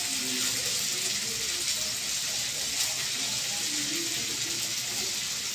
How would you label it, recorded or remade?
recorded